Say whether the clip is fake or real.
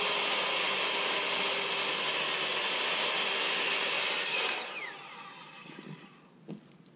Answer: real